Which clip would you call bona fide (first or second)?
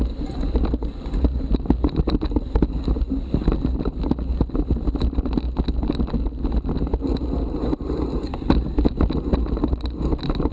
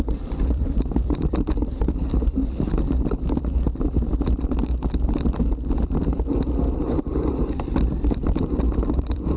first